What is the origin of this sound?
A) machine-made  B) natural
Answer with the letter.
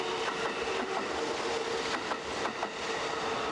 B